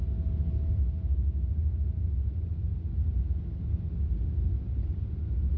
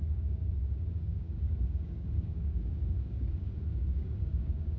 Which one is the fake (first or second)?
second